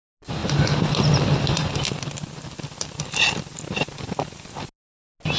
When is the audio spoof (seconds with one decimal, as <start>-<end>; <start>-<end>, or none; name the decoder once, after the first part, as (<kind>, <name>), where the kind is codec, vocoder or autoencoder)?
none